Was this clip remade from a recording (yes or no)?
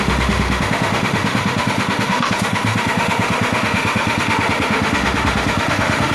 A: yes